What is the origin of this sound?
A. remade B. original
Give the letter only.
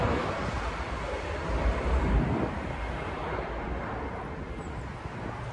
B